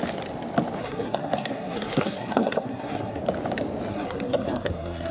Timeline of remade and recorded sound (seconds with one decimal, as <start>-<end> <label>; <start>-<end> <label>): 0.0-0.8 recorded; 0.8-3.2 remade; 3.2-3.9 recorded; 3.9-5.1 remade